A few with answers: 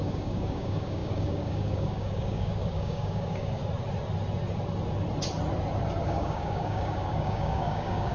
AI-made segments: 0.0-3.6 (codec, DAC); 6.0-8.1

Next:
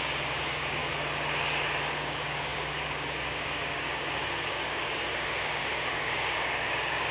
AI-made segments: 0.0-0.8 (codec, DAC); 1.8-7.1

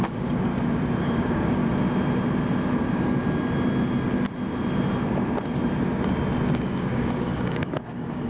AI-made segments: 0.0-0.5 (codec, DAC); 1.0-1.6; 6.6-8.3

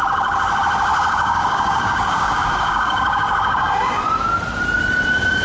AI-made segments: 0.9-4.0 (codec, DAC)

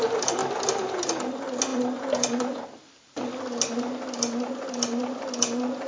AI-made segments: none

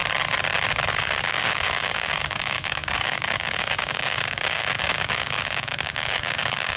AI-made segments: 0.7-6.8 (codec, DAC)

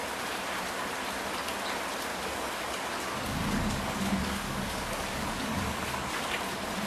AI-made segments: 2.1-6.2 (codec, DAC)